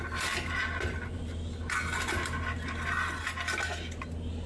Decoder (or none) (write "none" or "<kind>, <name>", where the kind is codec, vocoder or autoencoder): none